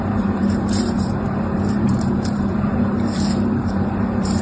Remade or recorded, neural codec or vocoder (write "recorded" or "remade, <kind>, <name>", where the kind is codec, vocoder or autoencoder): remade, vocoder, BigVGAN v2